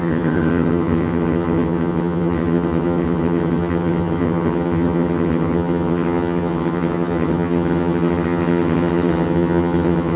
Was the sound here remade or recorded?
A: remade